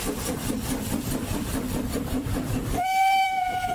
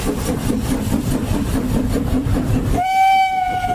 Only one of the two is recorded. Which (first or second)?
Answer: second